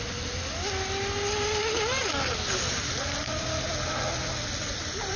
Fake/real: real